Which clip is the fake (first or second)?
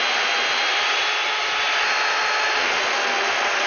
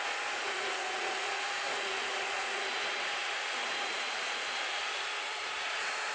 second